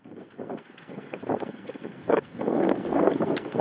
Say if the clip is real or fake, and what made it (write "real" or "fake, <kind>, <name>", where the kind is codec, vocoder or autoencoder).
fake, codec, SNAC